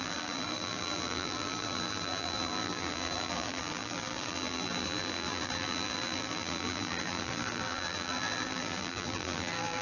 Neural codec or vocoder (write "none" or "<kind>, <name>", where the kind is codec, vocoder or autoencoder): vocoder, BigVGAN v2